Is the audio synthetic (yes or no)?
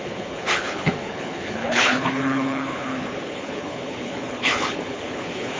yes